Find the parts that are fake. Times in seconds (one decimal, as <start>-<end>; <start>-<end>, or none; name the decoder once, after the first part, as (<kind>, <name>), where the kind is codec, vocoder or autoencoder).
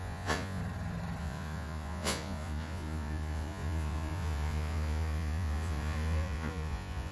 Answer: 0.0-0.6 (vocoder, Vocos); 1.2-7.1